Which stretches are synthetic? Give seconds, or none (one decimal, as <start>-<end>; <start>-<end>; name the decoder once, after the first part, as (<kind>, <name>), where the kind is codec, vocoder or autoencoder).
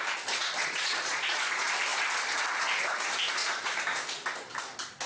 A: 0.4-1.3 (vocoder, Vocos)